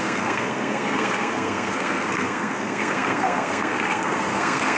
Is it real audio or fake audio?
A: fake